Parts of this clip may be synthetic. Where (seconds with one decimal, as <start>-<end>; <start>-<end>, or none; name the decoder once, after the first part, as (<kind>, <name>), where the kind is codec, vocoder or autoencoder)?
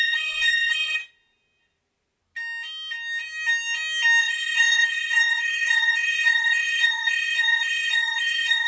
0.0-1.0 (codec, HILCodec); 4.2-8.7